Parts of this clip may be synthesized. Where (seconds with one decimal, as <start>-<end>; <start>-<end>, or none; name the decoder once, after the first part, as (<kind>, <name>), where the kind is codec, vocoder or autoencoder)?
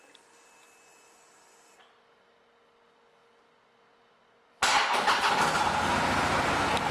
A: none